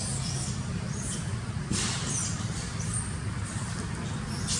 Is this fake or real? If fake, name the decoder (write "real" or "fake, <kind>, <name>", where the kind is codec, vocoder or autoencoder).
real